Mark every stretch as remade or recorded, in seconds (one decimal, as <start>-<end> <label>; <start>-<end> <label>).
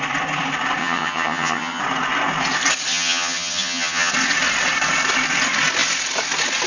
0.0-0.8 recorded; 0.8-1.8 remade; 1.8-2.9 recorded; 2.9-4.1 remade; 4.1-6.7 recorded